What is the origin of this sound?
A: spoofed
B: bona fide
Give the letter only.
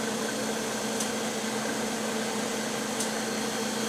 B